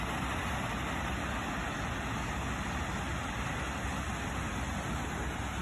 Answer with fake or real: real